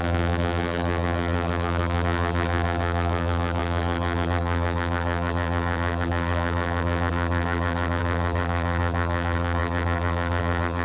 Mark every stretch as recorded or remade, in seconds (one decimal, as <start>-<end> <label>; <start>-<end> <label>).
0.0-10.8 remade